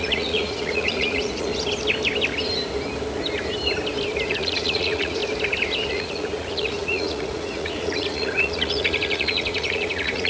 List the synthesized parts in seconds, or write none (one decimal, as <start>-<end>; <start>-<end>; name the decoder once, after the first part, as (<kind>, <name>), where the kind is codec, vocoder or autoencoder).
0.0-1.5 (vocoder, Vocos); 4.3-5.2; 5.9-10.3